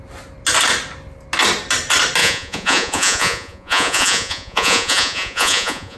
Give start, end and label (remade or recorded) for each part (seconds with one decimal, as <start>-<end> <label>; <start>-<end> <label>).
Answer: 0.0-2.2 recorded; 2.2-6.0 remade